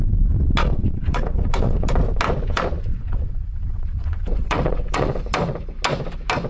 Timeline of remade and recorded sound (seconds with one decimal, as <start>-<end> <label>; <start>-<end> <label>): 0.0-0.6 recorded; 0.6-1.9 remade; 1.9-2.9 recorded; 2.9-5.2 remade; 5.2-6.5 recorded